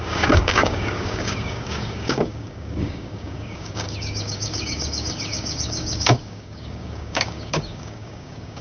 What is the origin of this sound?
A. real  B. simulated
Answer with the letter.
B